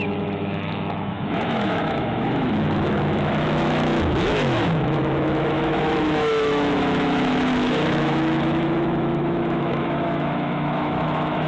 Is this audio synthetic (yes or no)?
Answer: yes